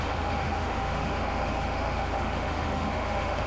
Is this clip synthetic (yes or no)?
yes